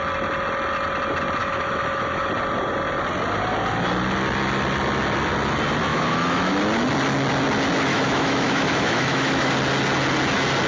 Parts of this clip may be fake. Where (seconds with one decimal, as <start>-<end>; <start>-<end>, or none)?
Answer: 1.4-2.3; 5.9-6.5; 7.9-9.5